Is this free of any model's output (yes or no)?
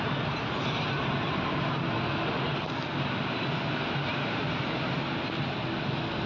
yes